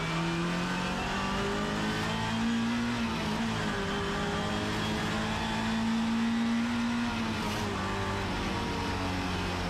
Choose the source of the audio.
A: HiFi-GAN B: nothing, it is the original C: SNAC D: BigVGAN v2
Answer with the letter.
B